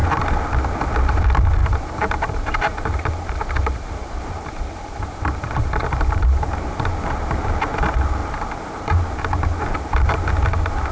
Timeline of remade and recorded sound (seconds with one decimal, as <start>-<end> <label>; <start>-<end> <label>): 0.0-1.6 recorded; 1.6-6.7 remade; 6.7-8.2 recorded; 8.2-9.0 remade; 9.0-10.9 recorded

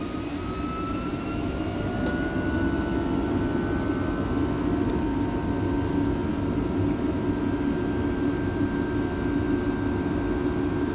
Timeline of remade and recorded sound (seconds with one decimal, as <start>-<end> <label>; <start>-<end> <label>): 0.0-10.9 recorded

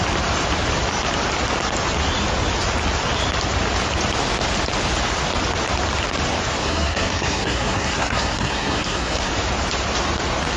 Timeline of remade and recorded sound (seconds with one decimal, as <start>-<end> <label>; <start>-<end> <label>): 0.0-6.6 recorded; 6.6-9.3 remade; 9.3-10.6 recorded

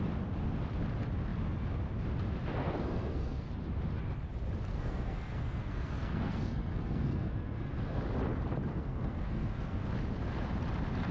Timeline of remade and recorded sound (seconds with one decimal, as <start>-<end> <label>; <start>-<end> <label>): 0.0-2.6 recorded; 2.6-3.5 remade; 3.5-4.7 recorded; 4.7-8.0 remade; 8.0-8.7 recorded; 8.7-9.8 remade; 9.8-11.1 recorded

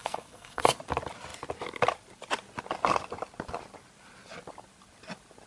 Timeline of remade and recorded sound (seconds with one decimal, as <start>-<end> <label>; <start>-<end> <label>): 0.0-0.8 remade; 0.8-5.5 recorded